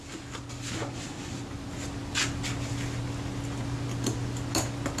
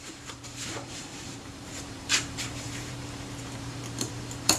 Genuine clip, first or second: first